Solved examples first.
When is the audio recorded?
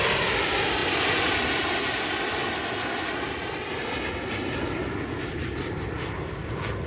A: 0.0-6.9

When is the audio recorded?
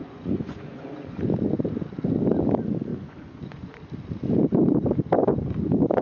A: 1.2-2.9; 3.8-6.0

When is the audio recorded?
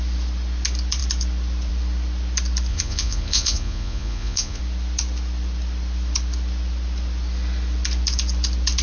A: 0.0-2.7; 4.6-8.8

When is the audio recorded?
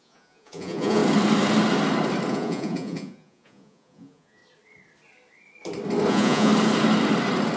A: 1.0-2.3; 4.4-6.1; 6.5-7.6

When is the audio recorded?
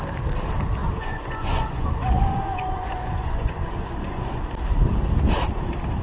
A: 0.0-0.8; 4.4-6.0